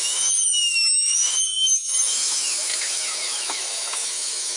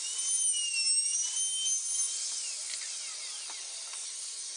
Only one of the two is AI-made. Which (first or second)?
first